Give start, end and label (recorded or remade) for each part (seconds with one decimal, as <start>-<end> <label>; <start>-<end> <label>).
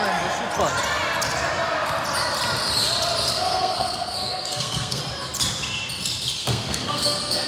0.0-3.3 recorded; 3.3-5.0 remade; 5.0-6.4 recorded; 6.4-7.5 remade